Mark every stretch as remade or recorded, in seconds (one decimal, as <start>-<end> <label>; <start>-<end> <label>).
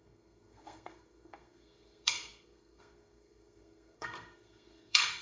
0.0-5.2 remade